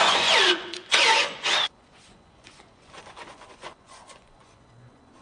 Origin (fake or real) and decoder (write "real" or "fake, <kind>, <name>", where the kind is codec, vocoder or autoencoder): fake, vocoder, Vocos